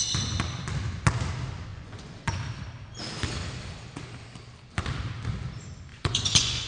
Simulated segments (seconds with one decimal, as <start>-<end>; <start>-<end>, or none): 1.7-2.4; 5.9-6.7